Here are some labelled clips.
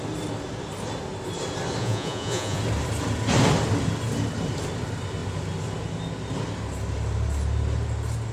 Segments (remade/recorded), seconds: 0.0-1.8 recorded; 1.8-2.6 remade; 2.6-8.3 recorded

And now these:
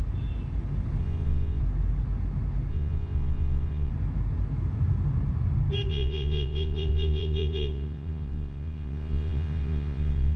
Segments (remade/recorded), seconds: 0.0-1.0 recorded; 1.0-1.6 remade; 1.6-2.7 recorded; 2.7-3.9 remade; 3.9-5.9 recorded; 5.9-10.4 remade

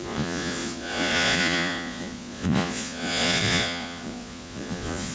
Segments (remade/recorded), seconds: 0.0-5.1 remade

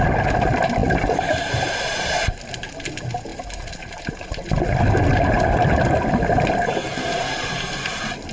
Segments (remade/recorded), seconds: 0.0-8.3 recorded